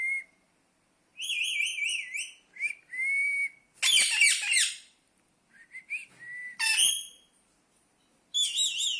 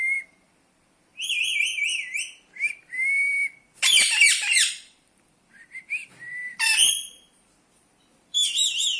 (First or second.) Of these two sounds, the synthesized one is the second